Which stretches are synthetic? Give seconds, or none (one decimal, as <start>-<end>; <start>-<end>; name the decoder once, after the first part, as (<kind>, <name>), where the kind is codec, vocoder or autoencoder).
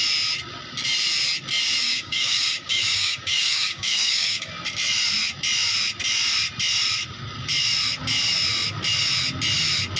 1.8-4.5 (codec, DAC)